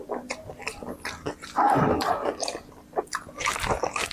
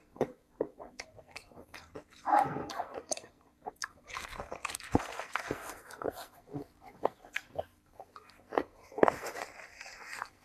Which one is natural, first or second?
first